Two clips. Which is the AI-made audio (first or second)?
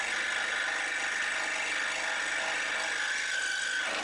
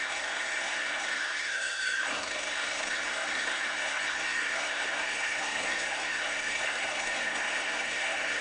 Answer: second